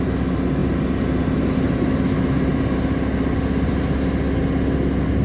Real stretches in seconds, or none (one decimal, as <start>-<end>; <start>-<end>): 0.0-5.2

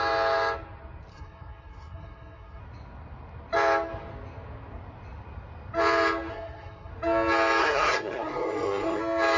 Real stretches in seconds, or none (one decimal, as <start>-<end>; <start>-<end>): 0.0-1.1; 2.6-6.3; 6.9-7.6; 9.0-9.4

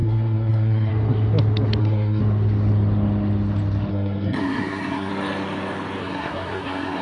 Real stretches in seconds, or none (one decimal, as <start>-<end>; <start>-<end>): 0.9-1.8; 2.2-3.9; 5.1-6.0

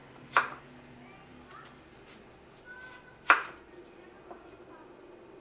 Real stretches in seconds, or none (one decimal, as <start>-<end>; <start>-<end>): 0.6-5.4

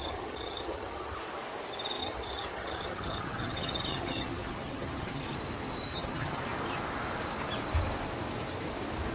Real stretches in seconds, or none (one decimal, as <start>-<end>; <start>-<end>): 1.2-2.0; 5.2-5.9; 6.4-9.1

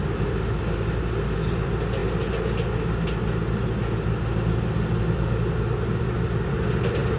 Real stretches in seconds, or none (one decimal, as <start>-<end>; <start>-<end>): 0.0-7.2

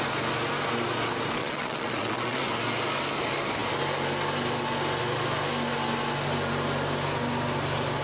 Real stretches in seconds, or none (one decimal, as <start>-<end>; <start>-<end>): 0.0-1.4; 2.5-8.0

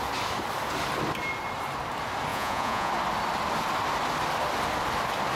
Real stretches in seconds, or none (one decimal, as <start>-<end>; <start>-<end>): 0.0-2.3; 2.9-5.4